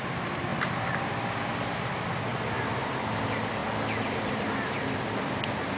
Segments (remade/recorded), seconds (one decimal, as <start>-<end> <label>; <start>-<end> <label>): 0.0-3.6 remade; 3.6-4.3 recorded; 4.3-5.8 remade